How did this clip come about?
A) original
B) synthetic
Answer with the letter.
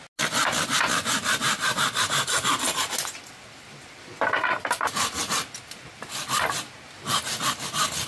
A